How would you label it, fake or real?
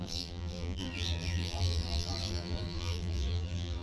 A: fake